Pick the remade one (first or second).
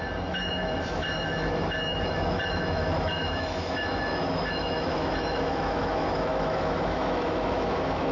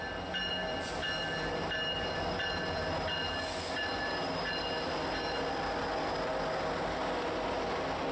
first